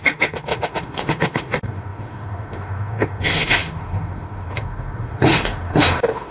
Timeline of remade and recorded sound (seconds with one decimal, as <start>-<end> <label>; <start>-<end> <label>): 0.0-6.3 remade